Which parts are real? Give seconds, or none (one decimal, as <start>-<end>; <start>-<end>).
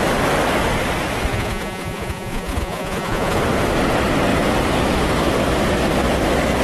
0.0-1.3; 3.4-6.6